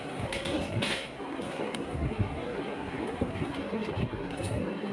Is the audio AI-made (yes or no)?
yes